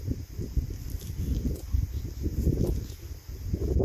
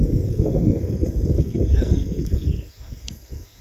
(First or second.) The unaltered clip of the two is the first